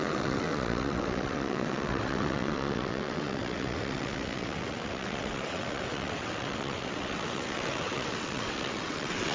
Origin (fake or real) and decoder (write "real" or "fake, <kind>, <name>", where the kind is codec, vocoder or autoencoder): fake, vocoder, WaveNeXt